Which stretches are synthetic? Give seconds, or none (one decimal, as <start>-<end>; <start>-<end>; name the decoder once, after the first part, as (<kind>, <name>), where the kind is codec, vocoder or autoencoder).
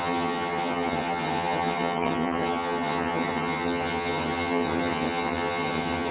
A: 0.0-6.1 (vocoder, HiFi-GAN)